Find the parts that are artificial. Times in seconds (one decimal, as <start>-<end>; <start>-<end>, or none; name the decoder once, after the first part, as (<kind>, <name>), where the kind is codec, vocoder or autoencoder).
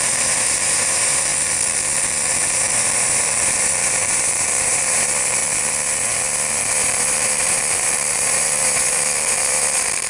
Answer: 0.0-1.3 (vocoder, BigVGAN v2); 2.3-5.4; 6.7-10.1